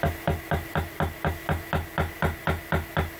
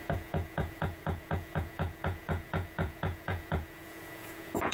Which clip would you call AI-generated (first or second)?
second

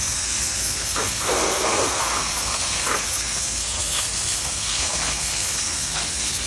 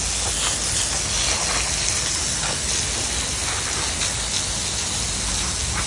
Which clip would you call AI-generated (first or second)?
first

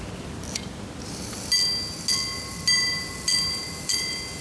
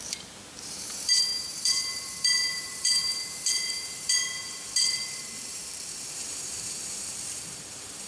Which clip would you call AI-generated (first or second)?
second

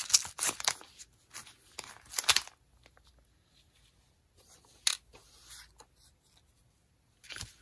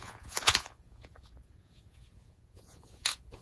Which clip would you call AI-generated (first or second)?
second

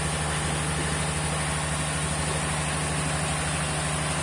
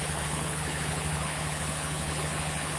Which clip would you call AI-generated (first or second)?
second